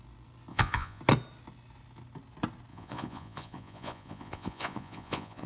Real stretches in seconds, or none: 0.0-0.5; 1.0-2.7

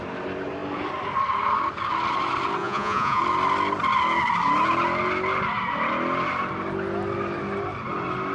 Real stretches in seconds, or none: 0.0-2.6; 3.2-8.3

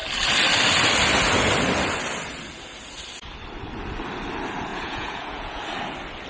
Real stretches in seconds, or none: 0.0-4.7; 5.6-6.3

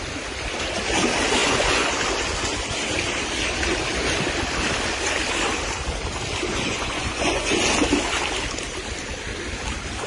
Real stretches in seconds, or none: 0.0-1.4; 1.9-6.5; 7.6-10.1

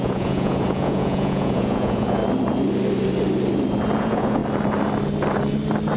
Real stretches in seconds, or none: 2.2-4.0; 4.4-6.0

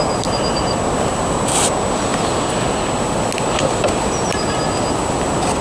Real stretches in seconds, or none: 0.0-5.6